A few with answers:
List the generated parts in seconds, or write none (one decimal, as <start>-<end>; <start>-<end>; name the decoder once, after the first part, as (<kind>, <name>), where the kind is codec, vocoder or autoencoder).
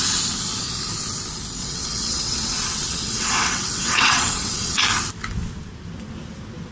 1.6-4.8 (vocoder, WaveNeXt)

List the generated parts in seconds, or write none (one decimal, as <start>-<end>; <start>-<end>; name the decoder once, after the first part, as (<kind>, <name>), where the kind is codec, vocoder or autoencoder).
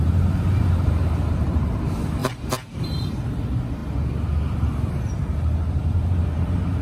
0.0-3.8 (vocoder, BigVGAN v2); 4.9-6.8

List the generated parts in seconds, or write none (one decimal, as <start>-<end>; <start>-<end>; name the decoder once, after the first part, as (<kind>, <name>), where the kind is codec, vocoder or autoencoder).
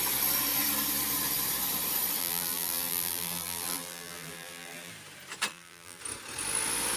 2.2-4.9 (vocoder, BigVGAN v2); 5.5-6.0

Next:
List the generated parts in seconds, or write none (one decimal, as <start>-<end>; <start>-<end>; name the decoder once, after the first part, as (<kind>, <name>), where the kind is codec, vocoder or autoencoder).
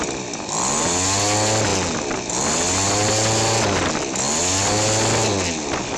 none